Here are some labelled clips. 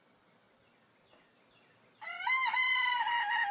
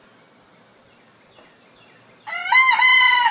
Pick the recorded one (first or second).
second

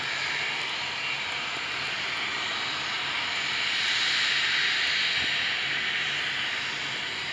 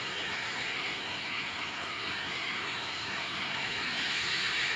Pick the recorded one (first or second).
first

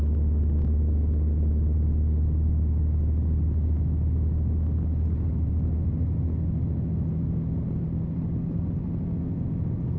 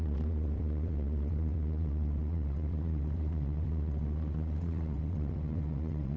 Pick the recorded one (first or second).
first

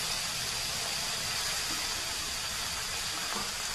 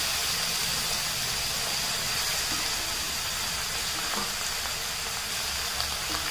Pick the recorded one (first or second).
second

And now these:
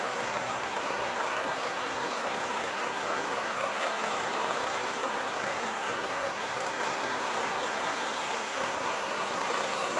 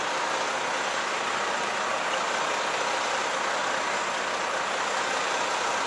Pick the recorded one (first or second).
second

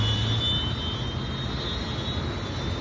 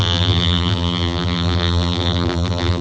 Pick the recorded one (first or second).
first